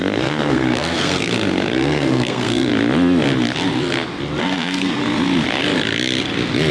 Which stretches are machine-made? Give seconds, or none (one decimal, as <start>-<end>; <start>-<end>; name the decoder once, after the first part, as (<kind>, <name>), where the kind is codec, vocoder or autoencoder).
0.0-2.7 (codec, SNAC); 4.4-5.0